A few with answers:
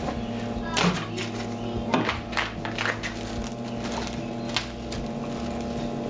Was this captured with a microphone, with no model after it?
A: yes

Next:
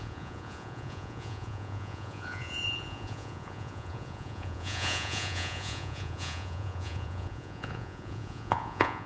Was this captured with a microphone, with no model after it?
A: no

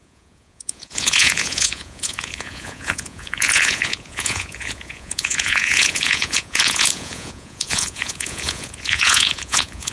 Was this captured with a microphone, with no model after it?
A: no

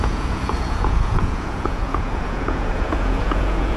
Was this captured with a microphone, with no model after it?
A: no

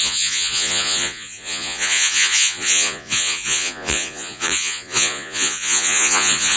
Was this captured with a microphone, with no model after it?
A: no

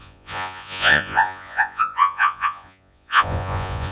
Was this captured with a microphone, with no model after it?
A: no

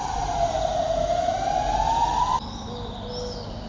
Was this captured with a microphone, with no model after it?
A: yes